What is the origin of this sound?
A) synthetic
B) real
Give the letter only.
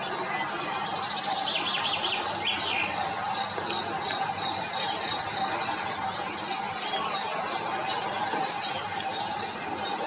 B